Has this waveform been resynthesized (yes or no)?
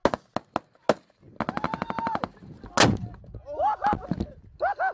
no